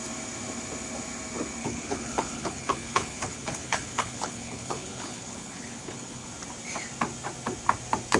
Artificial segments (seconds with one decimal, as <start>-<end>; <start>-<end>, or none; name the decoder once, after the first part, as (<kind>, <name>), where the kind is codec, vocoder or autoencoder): 1.6-6.3 (codec, HILCodec)